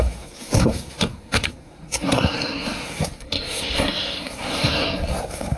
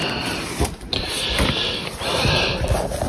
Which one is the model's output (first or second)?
first